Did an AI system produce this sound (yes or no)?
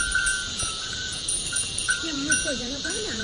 yes